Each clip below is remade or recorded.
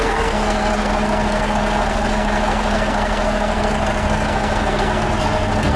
remade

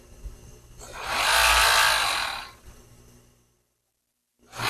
recorded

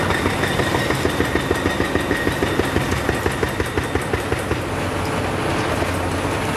recorded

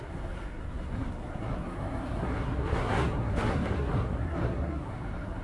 remade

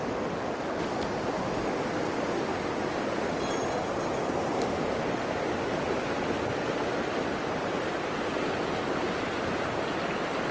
recorded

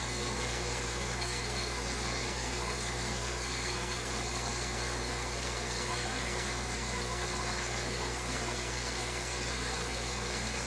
remade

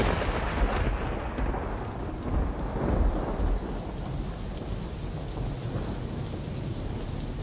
recorded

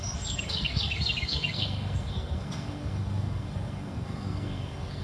remade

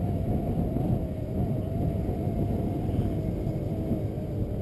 recorded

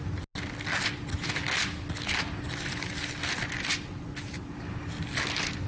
recorded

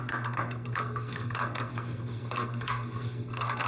remade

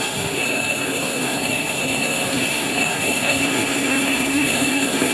remade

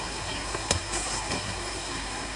remade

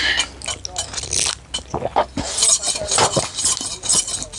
recorded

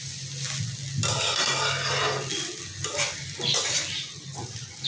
recorded